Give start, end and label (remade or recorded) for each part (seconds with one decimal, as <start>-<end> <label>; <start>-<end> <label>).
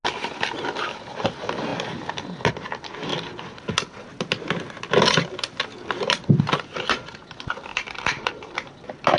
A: 0.0-7.7 recorded; 7.7-8.3 remade; 8.3-9.2 recorded